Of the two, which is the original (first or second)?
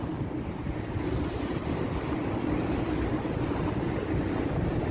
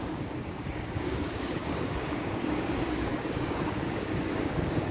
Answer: first